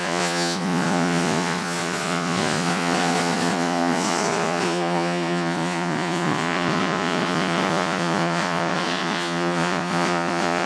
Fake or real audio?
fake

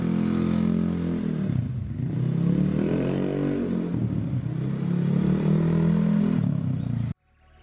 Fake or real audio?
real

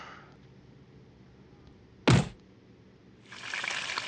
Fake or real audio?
real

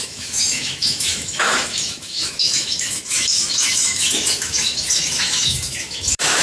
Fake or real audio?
fake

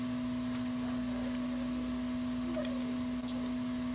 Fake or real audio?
real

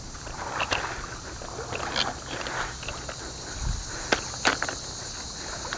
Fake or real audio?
real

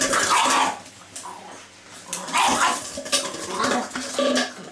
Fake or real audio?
real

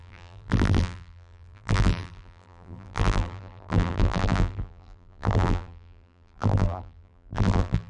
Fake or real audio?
fake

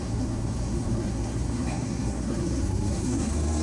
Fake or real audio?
fake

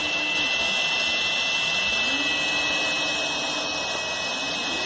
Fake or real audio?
real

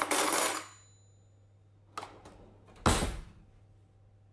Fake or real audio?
real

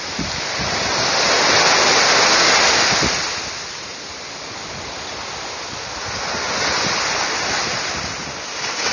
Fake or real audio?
real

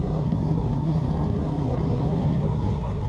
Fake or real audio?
fake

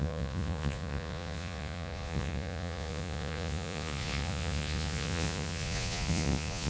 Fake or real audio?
fake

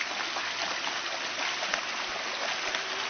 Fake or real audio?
real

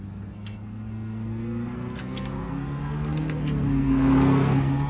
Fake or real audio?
fake